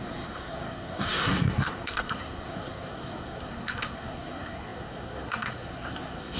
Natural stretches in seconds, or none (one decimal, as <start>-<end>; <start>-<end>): none